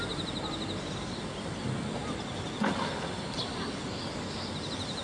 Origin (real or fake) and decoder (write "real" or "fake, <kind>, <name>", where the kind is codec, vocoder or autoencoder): real